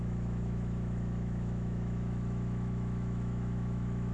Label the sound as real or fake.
fake